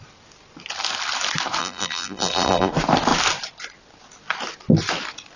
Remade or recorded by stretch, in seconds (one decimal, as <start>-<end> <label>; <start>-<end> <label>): 0.0-1.6 recorded; 1.6-2.7 remade; 2.7-5.4 recorded